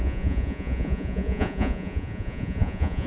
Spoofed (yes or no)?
yes